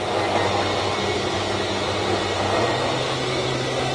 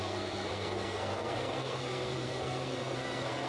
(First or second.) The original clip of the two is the first